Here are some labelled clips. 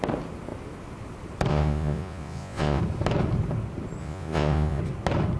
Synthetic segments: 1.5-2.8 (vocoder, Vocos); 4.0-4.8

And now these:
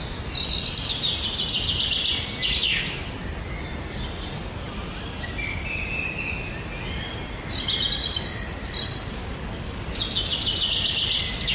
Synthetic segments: 9.2-9.8 (codec, DAC)

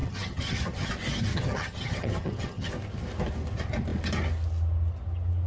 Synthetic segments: 0.0-0.9 (vocoder, HiFi-GAN); 1.3-2.7

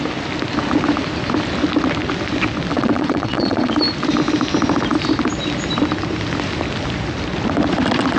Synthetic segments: 2.7-3.7 (vocoder, WaveNeXt)